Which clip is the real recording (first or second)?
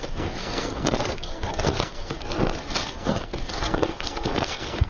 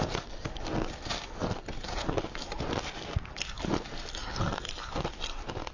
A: second